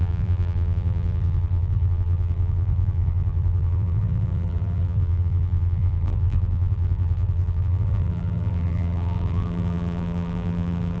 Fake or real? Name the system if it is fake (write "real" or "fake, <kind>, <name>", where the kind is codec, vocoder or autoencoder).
fake, vocoder, BigVGAN v2